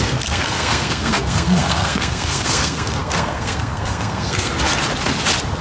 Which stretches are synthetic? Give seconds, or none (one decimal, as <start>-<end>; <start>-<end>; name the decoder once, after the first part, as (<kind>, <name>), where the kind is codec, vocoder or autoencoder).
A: 0.0-4.5 (codec, SNAC)